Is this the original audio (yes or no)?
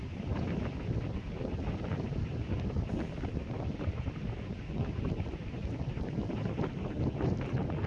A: yes